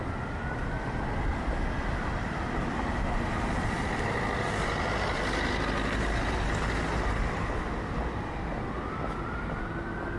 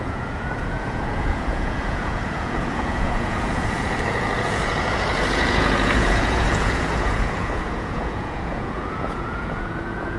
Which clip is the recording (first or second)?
first